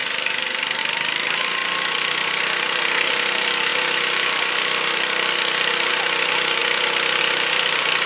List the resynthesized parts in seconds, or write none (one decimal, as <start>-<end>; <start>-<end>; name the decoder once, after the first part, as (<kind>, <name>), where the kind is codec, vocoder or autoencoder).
0.8-1.6 (vocoder, BigVGAN v2); 3.1-3.7; 5.9-6.6; 7.2-8.1

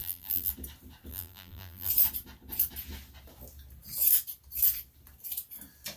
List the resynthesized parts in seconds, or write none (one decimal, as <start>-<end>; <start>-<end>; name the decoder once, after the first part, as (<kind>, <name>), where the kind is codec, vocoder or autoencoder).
0.0-0.5 (vocoder, BigVGAN v2); 1.1-1.9

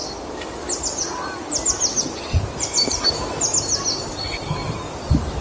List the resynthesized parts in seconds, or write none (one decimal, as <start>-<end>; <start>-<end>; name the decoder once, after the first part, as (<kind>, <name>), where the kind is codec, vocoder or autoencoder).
none

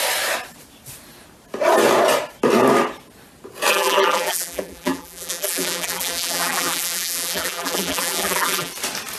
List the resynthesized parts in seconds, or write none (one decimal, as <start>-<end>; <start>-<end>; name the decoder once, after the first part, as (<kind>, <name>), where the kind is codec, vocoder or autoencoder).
3.7-8.7 (vocoder, BigVGAN v2)

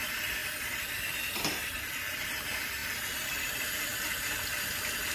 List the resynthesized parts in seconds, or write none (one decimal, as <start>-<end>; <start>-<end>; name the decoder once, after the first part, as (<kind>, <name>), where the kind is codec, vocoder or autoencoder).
0.4-2.3 (vocoder, BigVGAN v2)

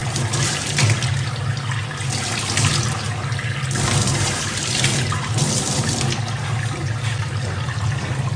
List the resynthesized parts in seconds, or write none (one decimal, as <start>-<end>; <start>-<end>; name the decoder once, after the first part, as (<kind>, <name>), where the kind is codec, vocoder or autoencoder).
none